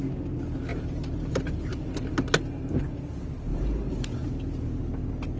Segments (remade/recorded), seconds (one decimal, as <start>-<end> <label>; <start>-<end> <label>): 0.0-0.7 recorded; 0.7-2.5 remade; 2.5-3.5 recorded; 3.5-4.4 remade; 4.4-5.4 recorded